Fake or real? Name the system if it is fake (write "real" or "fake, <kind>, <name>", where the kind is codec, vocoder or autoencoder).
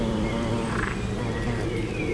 real